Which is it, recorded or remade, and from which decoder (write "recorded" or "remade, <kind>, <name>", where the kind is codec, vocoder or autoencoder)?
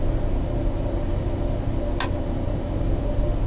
recorded